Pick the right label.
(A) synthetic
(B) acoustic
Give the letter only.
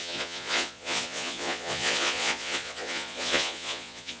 A